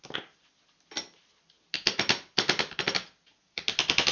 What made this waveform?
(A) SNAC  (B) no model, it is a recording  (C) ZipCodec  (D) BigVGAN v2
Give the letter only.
B